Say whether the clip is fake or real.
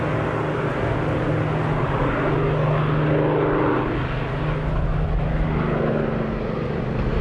real